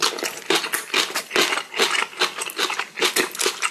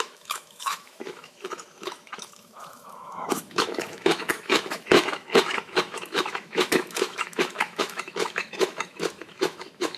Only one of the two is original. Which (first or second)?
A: first